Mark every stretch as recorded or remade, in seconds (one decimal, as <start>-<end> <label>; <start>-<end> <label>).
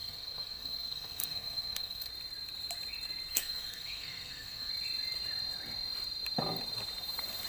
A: 0.0-2.1 remade; 2.1-3.3 recorded; 3.3-4.7 remade; 4.7-7.5 recorded